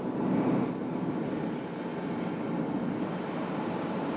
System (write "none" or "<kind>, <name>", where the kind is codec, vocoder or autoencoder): none